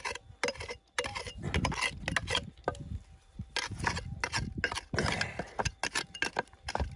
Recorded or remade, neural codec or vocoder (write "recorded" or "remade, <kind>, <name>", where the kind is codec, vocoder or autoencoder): recorded